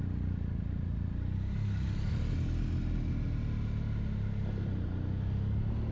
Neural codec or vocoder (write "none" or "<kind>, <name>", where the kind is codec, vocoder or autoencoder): none